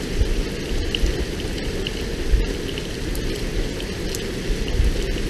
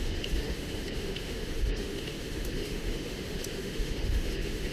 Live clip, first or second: first